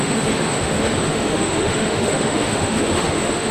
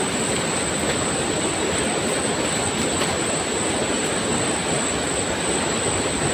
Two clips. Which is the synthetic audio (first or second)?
first